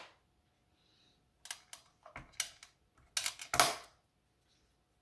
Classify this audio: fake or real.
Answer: real